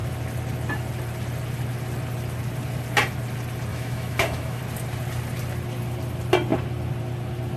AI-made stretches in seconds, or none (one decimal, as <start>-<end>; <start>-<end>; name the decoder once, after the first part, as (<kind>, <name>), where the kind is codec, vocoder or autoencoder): 3.7-4.6 (autoencoder, DAC-VAE)